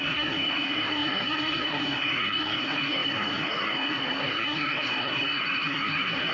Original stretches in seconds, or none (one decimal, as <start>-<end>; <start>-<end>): none